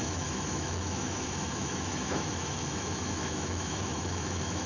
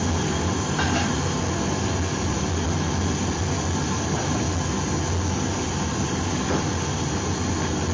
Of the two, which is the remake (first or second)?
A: first